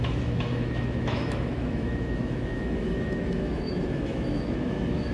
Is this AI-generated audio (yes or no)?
yes